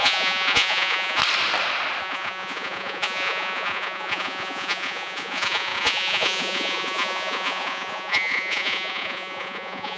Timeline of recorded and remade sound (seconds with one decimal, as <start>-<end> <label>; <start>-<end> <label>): 0.0-1.2 remade; 1.2-2.0 recorded; 2.0-10.0 remade